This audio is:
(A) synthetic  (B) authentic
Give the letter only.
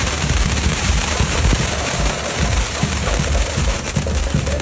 A